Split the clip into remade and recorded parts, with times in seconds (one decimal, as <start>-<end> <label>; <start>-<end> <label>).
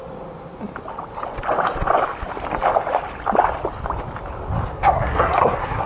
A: 0.0-4.7 recorded; 4.7-5.9 remade